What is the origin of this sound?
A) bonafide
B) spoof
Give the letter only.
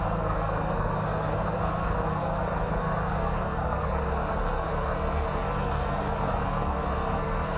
B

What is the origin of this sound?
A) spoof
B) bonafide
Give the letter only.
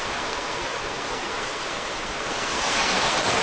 A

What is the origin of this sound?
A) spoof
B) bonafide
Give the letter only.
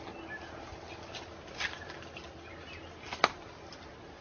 B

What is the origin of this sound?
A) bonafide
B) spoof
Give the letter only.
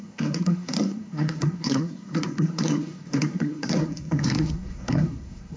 B